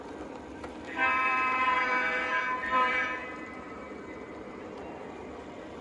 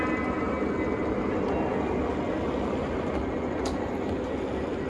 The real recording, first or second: second